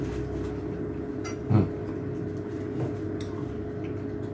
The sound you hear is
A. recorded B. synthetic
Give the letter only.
A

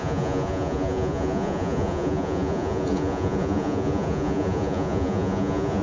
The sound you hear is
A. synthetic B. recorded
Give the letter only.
A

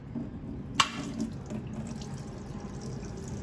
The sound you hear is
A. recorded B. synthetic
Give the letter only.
A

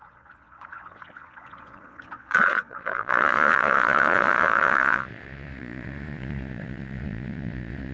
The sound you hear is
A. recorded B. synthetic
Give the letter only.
B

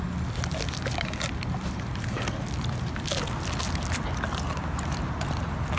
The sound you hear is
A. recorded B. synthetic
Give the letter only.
A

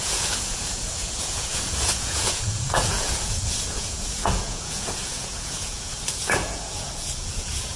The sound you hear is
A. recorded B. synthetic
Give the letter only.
B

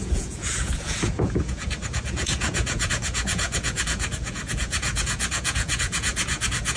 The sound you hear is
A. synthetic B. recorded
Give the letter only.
A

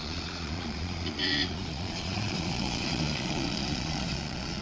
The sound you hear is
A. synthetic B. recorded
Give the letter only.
A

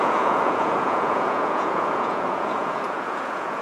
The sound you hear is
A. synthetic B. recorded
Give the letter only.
A